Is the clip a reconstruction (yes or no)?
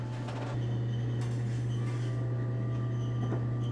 no